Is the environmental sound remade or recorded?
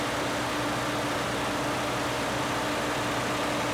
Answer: recorded